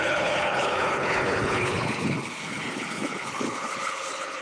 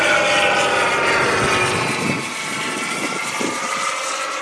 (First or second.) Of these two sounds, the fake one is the first